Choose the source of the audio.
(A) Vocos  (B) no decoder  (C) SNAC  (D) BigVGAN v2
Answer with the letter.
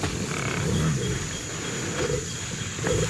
B